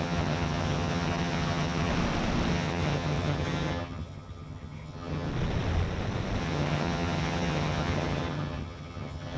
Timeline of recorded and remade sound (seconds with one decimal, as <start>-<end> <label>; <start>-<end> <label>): 0.0-1.9 remade; 1.9-2.5 recorded; 2.5-5.3 remade; 5.3-6.4 recorded; 6.4-9.4 remade